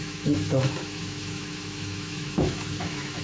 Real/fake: fake